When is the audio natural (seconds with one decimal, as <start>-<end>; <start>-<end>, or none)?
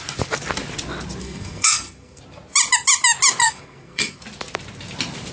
0.0-1.2; 2.2-3.4; 4.2-5.3